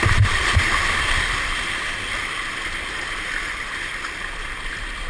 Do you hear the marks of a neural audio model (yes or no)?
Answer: no